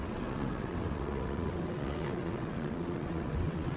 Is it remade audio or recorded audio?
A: remade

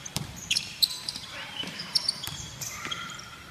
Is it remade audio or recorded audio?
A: remade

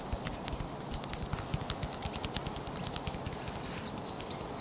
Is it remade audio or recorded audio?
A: recorded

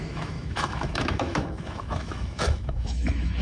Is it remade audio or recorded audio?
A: remade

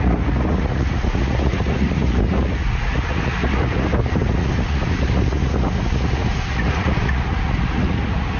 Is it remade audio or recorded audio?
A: remade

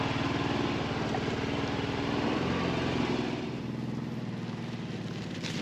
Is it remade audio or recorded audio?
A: recorded